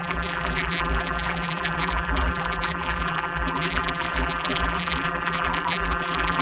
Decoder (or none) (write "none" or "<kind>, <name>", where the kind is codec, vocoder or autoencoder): vocoder, BigVGAN v2